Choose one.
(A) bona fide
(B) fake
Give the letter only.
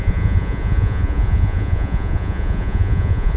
B